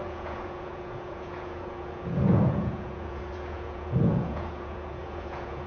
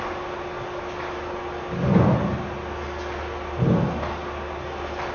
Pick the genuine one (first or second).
second